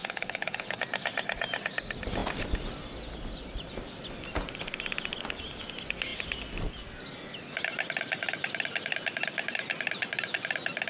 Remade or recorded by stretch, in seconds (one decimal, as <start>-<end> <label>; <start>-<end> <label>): 0.0-0.8 remade; 0.8-10.9 recorded